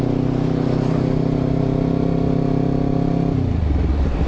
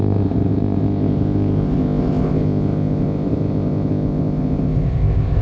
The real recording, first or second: first